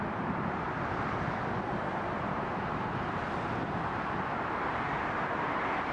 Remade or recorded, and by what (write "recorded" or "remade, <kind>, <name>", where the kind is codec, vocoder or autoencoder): recorded